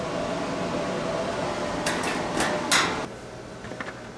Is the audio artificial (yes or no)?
no